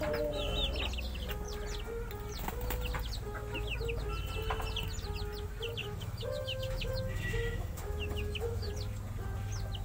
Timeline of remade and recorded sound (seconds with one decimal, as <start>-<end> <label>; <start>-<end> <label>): 0.0-5.8 recorded; 5.8-8.7 remade; 8.7-9.8 recorded